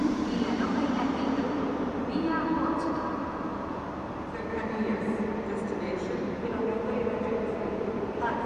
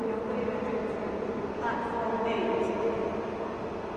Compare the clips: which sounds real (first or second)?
second